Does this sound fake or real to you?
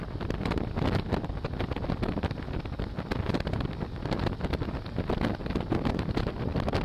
real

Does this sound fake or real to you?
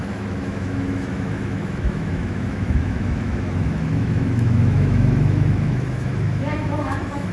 fake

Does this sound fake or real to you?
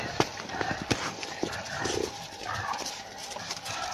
real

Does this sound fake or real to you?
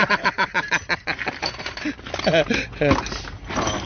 real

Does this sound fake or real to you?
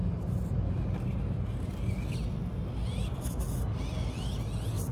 real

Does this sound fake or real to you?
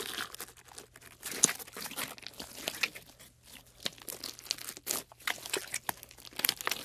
real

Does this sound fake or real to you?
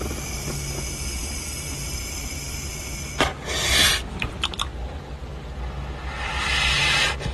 real